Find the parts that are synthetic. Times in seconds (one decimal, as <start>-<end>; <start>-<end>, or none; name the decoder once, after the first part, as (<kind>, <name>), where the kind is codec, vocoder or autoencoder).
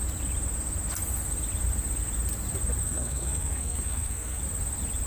2.8-4.4 (codec, SNAC)